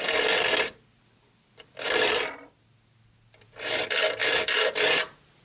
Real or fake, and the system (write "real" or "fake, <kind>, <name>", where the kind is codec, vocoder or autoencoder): real